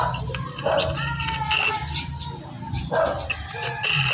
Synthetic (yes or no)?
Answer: no